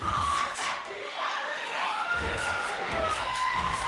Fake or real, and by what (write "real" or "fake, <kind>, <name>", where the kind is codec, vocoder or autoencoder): fake, autoencoder, DAC-VAE